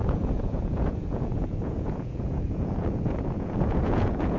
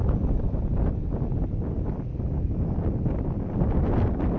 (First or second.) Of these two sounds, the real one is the second